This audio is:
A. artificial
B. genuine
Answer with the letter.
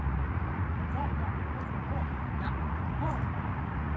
A